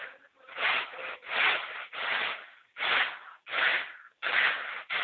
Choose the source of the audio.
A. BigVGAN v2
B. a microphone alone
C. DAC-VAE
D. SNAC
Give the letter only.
B